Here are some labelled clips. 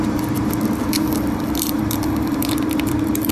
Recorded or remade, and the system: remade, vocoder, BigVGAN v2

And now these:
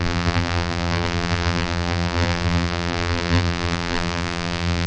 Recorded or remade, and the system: remade, vocoder, BigVGAN v2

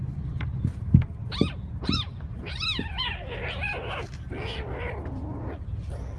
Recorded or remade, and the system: recorded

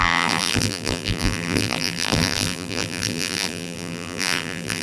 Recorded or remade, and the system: remade, vocoder, BigVGAN v2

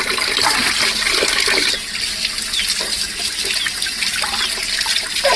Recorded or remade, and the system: recorded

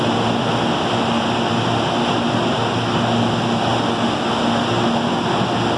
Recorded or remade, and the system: recorded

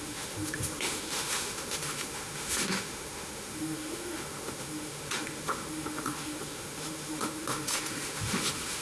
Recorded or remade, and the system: remade, autoencoder, DAC-VAE